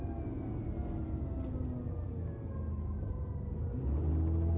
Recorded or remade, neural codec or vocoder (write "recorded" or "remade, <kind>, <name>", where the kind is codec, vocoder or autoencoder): recorded